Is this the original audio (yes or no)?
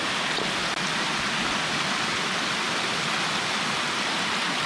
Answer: yes